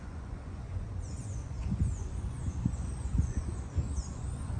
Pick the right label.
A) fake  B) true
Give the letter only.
A